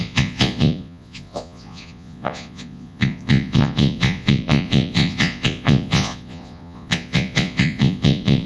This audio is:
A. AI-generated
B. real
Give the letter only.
A